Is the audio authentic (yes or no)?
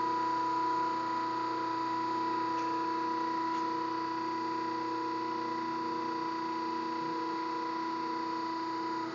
yes